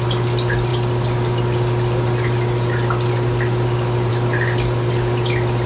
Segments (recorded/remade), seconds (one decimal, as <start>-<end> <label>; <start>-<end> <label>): 0.0-5.7 recorded